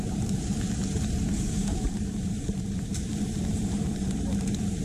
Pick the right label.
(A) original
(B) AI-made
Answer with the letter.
B